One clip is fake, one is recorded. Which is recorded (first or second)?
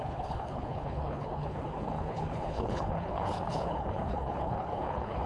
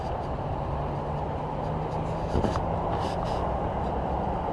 second